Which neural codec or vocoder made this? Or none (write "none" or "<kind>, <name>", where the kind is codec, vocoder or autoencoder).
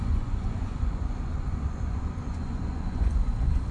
vocoder, Vocos